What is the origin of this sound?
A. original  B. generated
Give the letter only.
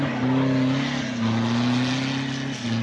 A